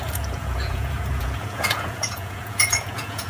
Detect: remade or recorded remade